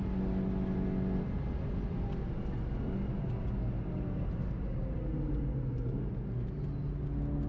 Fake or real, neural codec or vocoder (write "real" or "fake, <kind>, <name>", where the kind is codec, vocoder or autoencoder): real